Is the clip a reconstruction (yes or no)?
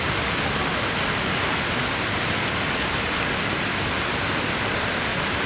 no